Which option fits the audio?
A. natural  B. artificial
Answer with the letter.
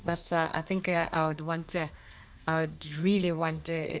B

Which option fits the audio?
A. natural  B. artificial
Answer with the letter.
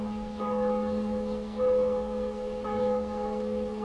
B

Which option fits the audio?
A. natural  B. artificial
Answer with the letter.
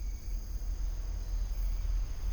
A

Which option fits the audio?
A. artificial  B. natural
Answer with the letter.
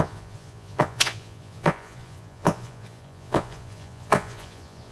A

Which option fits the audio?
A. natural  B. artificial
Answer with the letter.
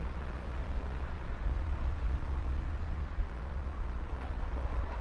B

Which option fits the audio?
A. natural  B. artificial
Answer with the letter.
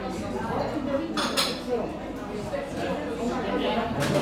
A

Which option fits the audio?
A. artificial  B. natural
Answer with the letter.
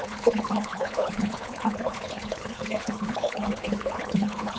A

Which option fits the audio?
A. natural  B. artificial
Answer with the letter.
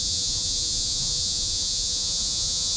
B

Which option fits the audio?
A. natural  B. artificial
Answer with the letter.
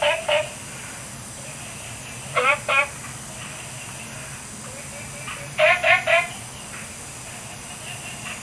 A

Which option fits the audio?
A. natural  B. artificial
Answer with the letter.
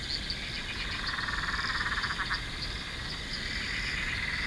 A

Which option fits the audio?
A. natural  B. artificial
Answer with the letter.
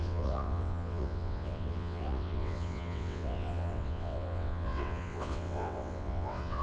B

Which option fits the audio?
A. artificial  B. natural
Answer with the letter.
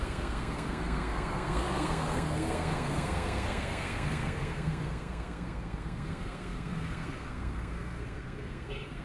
A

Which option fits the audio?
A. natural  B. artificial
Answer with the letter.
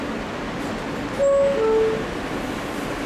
A